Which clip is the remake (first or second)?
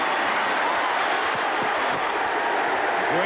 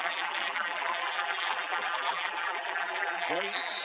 second